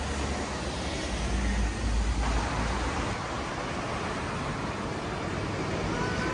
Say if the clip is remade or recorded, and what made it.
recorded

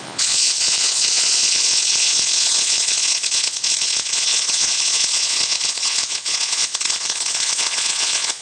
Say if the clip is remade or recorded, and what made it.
remade, vocoder, Vocos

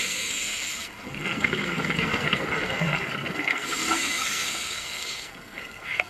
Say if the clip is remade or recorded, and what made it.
remade, codec, SNAC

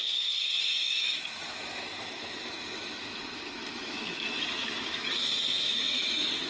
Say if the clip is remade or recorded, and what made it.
remade, autoencoder, DAC-VAE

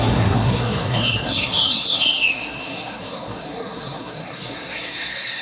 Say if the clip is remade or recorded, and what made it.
remade, codec, SNAC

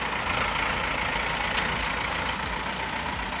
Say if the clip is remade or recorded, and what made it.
recorded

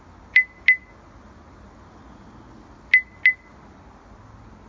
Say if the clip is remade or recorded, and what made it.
recorded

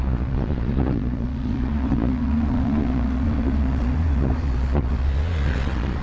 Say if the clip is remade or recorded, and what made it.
remade, vocoder, Vocos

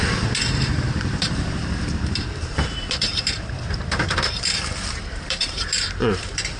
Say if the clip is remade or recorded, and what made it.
remade, vocoder, BigVGAN v2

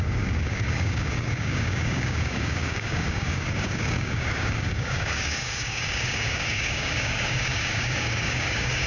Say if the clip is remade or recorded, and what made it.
remade, codec, DAC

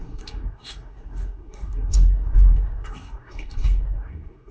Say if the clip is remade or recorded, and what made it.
remade, codec, SNAC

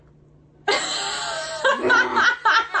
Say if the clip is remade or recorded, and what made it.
recorded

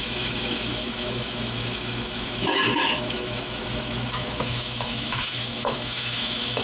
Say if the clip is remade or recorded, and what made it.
remade, autoencoder, DAC-VAE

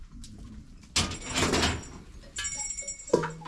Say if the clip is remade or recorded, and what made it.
recorded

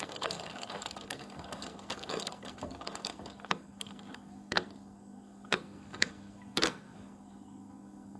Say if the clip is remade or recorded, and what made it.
remade, codec, SNAC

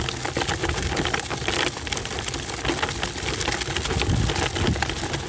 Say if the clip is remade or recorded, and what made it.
recorded